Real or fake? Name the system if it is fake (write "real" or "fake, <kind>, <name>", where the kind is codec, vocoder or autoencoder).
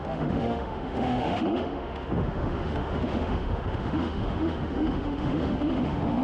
fake, autoencoder, DAC-VAE